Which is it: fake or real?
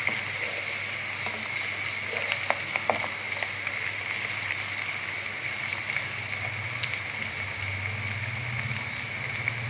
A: real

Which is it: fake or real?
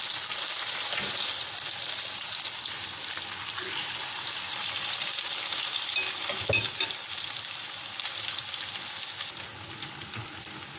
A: real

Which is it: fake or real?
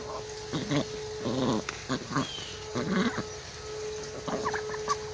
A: real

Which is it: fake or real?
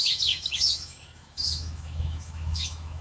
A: fake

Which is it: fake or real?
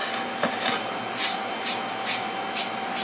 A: real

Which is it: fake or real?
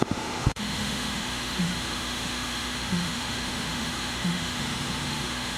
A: fake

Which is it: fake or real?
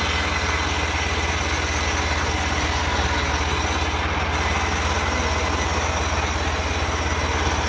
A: real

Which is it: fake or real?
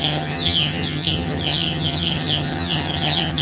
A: fake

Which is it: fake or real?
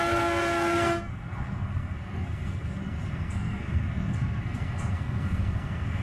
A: fake